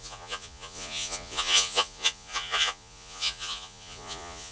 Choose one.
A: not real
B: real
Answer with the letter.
A